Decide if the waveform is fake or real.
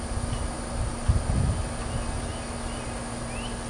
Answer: real